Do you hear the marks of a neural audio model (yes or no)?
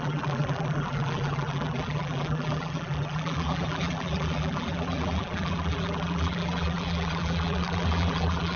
yes